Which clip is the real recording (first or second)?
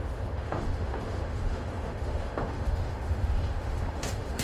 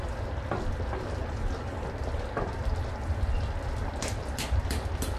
second